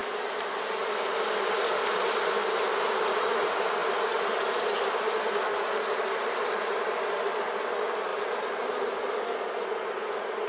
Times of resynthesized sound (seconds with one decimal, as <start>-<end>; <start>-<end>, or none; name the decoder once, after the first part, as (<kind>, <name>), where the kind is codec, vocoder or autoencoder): 0.0-3.2 (vocoder, BigVGAN v2); 3.8-7.4